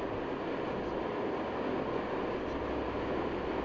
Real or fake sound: real